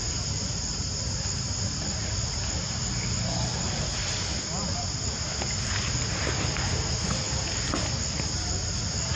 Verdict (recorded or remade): recorded